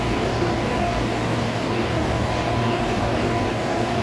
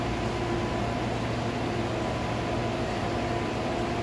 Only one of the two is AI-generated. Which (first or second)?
first